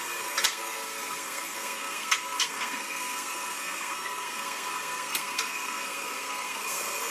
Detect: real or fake fake